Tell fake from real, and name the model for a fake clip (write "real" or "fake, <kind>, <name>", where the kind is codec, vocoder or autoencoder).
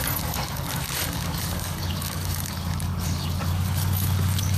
fake, codec, DAC